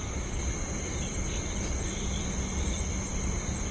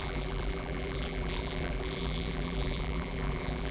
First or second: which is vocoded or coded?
second